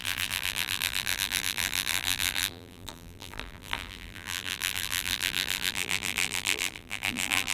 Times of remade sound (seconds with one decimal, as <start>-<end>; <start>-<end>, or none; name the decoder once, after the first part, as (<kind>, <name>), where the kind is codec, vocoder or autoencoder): 0.0-7.5 (vocoder, BigVGAN v2)